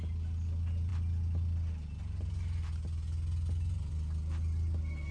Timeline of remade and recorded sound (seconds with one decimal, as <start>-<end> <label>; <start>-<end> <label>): 0.0-5.1 recorded